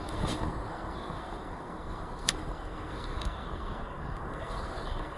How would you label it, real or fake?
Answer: fake